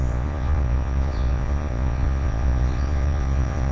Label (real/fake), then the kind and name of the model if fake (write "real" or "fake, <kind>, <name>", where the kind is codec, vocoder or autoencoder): fake, vocoder, Vocos